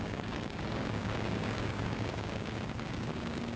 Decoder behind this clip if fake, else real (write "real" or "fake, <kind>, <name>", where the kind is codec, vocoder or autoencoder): fake, codec, DAC